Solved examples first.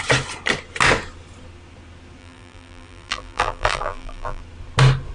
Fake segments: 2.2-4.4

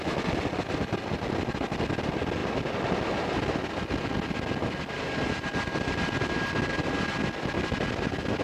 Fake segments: none

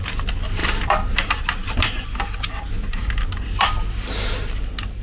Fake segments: 0.6-1.1

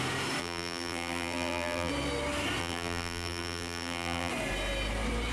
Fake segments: 0.4-1.9; 2.6-4.3

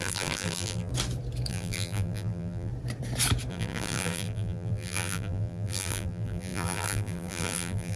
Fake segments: 0.0-0.9; 1.5-2.7; 3.5-8.0